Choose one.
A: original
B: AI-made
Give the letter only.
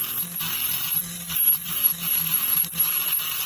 A